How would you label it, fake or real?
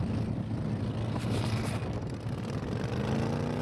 real